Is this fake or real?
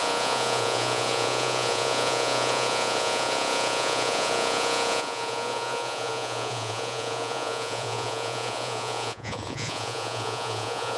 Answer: fake